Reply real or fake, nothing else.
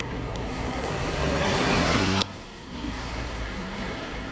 fake